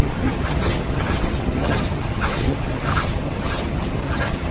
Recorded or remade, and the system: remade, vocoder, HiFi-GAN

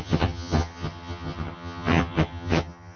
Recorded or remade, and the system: remade, vocoder, HiFi-GAN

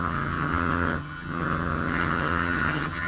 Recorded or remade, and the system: remade, vocoder, HiFi-GAN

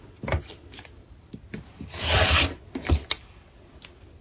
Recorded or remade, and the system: recorded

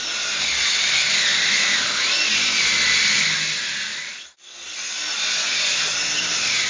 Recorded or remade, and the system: recorded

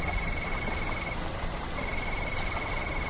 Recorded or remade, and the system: recorded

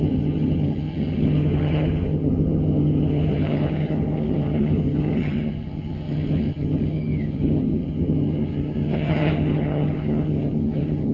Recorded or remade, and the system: remade, vocoder, HiFi-GAN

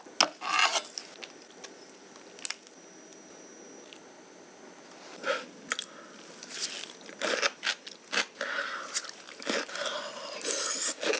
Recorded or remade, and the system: recorded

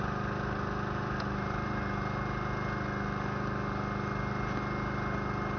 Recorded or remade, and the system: recorded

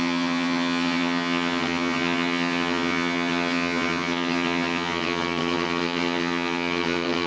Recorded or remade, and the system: remade, vocoder, HiFi-GAN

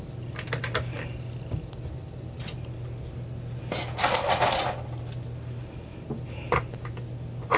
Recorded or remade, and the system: recorded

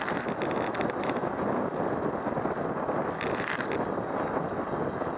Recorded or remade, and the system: recorded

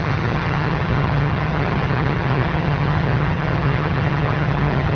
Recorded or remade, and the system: remade, vocoder, HiFi-GAN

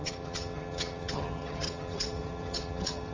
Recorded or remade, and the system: remade, vocoder, HiFi-GAN